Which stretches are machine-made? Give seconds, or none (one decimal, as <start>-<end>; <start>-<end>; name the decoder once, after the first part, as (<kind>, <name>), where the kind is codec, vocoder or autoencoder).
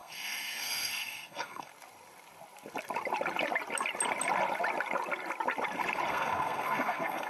0.0-1.7 (codec, SNAC); 6.1-7.3